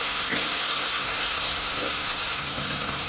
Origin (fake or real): fake